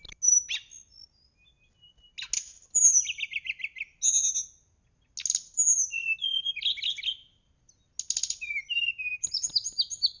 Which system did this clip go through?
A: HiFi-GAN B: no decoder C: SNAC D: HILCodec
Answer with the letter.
B